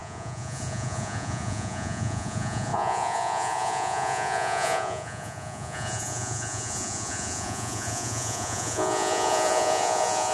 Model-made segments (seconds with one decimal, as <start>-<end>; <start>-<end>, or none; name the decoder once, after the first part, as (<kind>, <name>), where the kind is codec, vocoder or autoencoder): 0.0-10.3 (vocoder, Vocos)